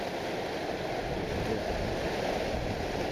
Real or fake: real